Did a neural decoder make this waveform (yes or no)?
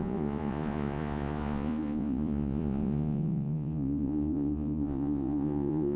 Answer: yes